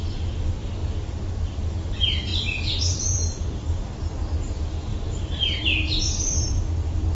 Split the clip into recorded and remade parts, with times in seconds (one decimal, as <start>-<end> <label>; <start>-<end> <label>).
0.0-7.1 remade